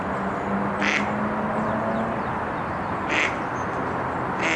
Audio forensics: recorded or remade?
recorded